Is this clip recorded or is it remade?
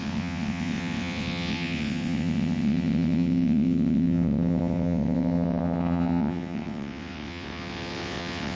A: remade